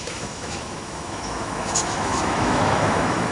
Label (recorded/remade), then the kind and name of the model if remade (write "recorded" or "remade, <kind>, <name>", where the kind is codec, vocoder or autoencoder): remade, autoencoder, DAC-VAE